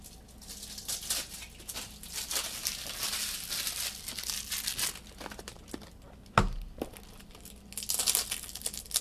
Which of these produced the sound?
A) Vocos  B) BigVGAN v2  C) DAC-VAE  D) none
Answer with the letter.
D